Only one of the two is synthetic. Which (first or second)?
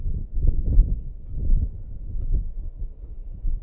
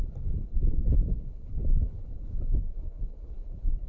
second